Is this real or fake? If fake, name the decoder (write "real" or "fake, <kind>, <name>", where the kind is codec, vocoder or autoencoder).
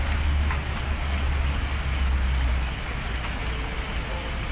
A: real